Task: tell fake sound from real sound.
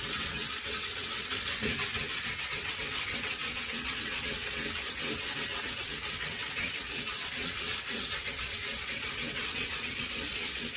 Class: fake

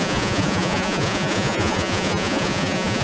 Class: fake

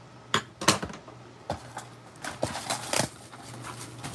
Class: real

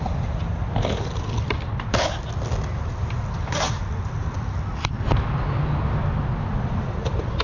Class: real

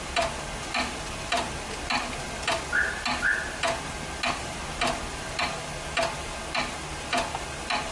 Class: real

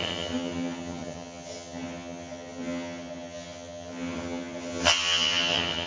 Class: fake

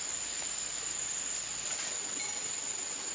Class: real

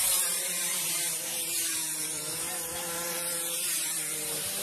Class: fake